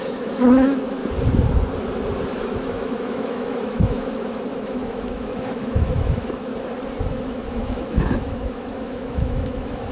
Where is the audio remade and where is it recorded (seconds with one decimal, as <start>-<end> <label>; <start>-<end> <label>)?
0.0-1.0 remade; 1.0-2.5 recorded; 2.5-6.5 remade; 6.5-7.0 recorded; 7.0-9.9 remade